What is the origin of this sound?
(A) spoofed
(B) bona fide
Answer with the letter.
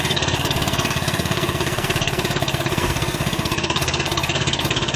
A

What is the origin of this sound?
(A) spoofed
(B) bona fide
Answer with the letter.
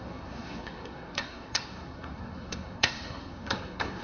A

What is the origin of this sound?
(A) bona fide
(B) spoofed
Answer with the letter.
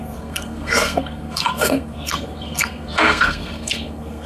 B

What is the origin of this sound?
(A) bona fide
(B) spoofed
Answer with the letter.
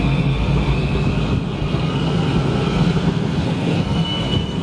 B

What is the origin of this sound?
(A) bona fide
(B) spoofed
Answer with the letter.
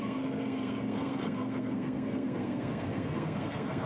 B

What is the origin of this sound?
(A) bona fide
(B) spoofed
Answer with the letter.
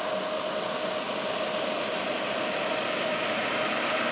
A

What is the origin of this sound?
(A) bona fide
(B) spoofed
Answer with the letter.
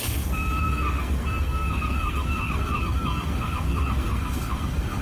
B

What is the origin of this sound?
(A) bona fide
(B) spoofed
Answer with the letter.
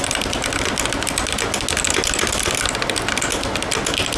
A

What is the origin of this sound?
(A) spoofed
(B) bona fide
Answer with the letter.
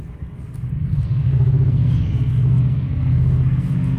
A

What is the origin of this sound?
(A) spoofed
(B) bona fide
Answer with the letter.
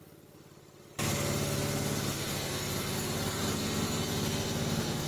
B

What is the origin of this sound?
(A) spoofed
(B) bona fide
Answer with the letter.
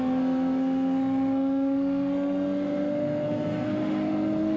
A